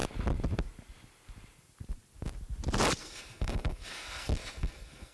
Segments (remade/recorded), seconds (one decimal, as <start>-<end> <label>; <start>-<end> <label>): 0.0-3.0 recorded; 3.0-5.1 remade